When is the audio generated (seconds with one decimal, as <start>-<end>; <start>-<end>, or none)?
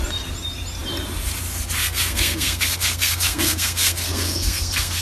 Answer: 1.8-5.0